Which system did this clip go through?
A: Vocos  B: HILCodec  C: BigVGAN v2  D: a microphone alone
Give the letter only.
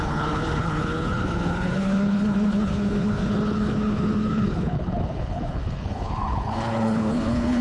B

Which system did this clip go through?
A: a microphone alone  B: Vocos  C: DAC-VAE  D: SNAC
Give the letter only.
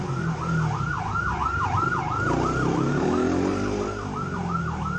A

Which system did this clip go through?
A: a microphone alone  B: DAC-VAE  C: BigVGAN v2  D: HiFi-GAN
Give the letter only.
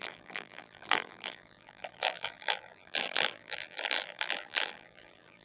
C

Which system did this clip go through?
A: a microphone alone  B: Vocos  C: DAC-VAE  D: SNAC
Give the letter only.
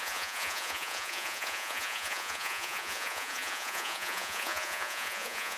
B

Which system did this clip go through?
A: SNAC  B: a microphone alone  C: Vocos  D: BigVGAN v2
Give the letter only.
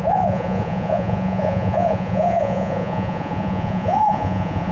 C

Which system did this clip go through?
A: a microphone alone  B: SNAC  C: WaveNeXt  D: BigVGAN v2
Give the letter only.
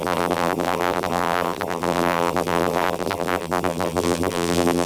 D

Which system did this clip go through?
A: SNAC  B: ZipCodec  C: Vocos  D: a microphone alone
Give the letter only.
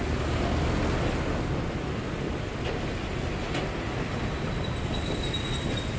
D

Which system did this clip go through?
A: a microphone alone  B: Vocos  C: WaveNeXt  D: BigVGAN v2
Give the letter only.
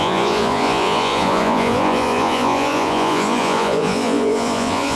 B